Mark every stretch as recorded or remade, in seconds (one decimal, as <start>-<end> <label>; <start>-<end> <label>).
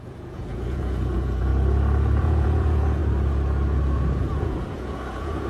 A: 0.0-1.5 remade; 1.5-2.2 recorded; 2.2-3.0 remade; 3.0-4.2 recorded; 4.2-5.5 remade